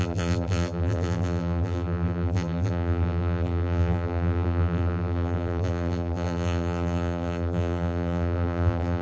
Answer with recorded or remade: remade